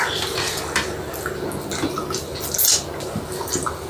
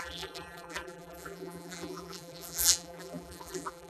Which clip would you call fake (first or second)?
second